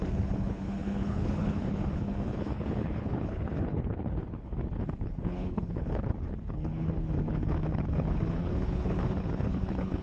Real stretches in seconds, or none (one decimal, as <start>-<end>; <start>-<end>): none